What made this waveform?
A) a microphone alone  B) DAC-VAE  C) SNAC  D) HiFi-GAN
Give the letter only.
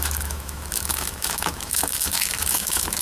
B